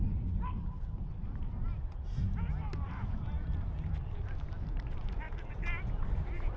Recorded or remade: recorded